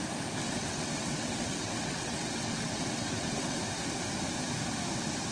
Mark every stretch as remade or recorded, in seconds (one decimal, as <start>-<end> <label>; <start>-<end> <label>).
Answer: 0.0-0.4 recorded; 0.4-3.6 remade; 3.6-5.3 recorded